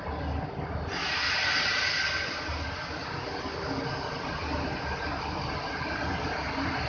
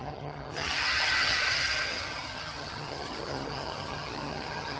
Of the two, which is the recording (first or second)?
first